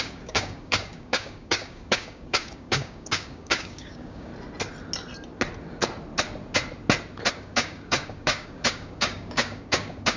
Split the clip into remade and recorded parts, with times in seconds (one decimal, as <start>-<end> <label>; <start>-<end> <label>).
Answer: 0.0-4.3 remade; 4.3-7.3 recorded; 7.3-10.2 remade